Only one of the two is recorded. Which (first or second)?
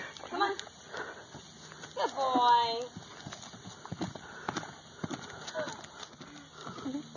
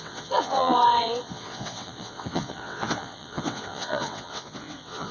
first